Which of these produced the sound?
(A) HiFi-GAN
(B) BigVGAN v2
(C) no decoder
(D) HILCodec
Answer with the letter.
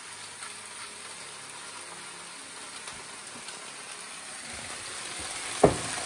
C